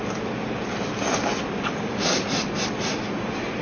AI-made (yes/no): yes